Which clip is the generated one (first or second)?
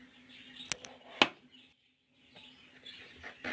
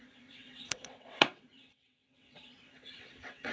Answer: second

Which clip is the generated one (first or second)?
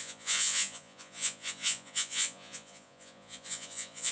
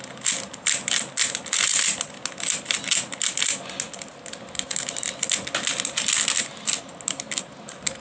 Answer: first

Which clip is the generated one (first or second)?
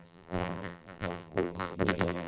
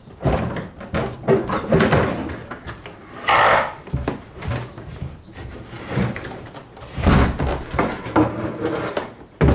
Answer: first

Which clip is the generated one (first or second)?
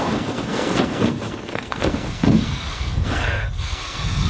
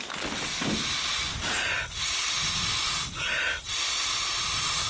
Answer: first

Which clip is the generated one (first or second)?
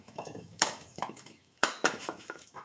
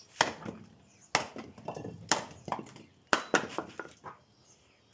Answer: first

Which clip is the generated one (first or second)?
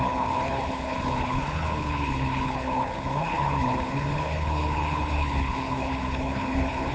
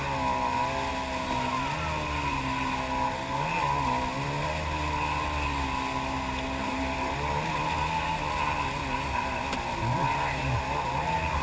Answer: first